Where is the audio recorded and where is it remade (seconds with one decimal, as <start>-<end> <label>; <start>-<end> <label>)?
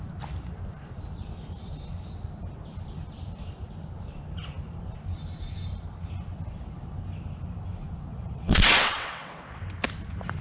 0.0-8.1 recorded; 8.1-9.6 remade; 9.6-10.4 recorded